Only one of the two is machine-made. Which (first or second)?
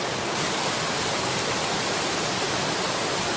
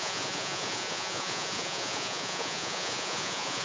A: second